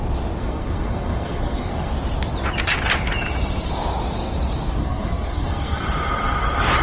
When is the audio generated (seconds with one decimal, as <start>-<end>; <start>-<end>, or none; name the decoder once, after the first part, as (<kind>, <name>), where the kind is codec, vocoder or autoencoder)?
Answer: 0.4-1.9 (codec, SNAC); 4.8-5.8